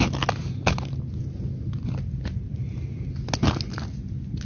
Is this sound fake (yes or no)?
no